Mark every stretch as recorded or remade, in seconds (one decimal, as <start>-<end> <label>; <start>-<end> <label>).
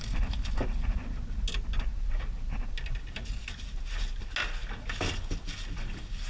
0.0-6.3 recorded